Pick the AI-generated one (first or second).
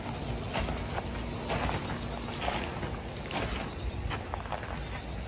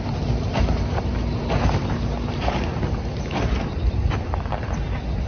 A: second